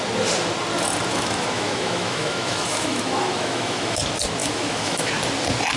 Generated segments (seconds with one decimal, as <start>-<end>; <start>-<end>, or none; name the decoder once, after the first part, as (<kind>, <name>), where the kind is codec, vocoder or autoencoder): 1.1-4.0 (autoencoder, DAC-VAE); 4.4-5.1

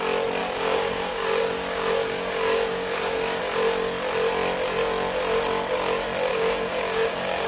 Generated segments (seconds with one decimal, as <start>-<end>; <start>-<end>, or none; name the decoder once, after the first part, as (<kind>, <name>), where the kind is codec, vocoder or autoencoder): 0.4-3.4 (codec, DAC); 6.3-7.5

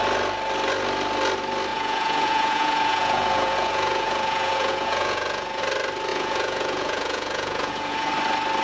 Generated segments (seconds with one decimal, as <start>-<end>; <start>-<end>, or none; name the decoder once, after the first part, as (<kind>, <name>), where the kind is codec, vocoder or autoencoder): 1.7-5.6 (vocoder, Vocos); 6.1-8.1

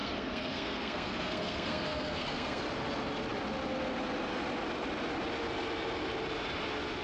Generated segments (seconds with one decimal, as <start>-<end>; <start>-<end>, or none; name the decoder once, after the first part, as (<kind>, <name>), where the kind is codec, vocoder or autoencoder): 0.0-2.6 (codec, SNAC)

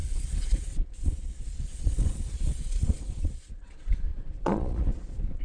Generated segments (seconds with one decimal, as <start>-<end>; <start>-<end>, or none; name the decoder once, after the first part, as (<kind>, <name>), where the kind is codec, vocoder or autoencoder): 0.0-5.4 (vocoder, Vocos)

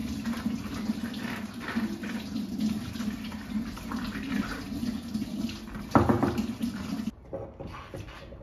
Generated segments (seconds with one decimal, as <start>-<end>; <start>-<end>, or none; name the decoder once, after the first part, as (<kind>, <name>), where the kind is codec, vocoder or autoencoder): none

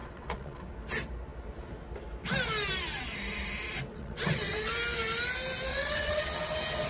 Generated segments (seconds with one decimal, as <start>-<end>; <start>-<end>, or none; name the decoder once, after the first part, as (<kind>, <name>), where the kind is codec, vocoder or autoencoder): 0.0-0.6 (vocoder, WaveNeXt); 3.9-4.7; 5.7-6.2